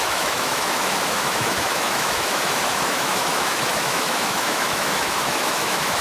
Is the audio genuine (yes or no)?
no